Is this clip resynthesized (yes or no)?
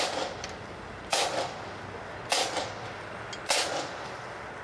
no